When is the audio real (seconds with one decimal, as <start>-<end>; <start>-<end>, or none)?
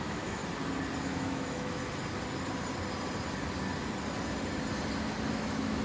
0.4-1.0; 1.8-5.3